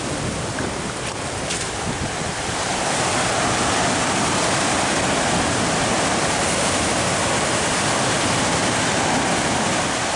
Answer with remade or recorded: remade